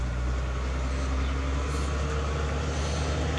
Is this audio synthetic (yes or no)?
no